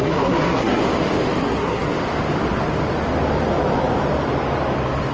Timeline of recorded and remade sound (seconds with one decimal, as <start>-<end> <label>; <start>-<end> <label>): 0.0-0.8 remade; 0.8-1.4 recorded; 1.4-1.9 remade; 1.9-5.1 recorded